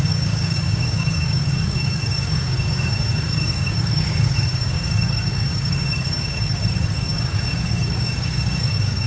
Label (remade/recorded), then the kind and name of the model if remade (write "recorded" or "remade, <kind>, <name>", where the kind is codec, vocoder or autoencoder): remade, codec, DAC